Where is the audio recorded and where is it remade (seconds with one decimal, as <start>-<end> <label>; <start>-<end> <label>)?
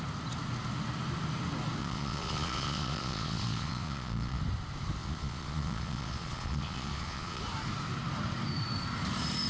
0.0-1.8 recorded; 1.8-4.4 remade; 4.4-5.0 recorded; 5.0-7.4 remade; 7.4-9.5 recorded